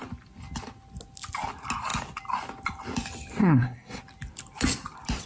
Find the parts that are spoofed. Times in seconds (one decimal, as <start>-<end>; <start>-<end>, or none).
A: 3.4-4.0